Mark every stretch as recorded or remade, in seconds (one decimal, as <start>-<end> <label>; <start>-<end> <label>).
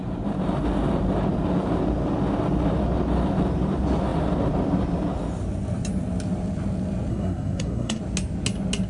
0.0-7.1 recorded; 7.1-8.0 remade; 8.0-8.9 recorded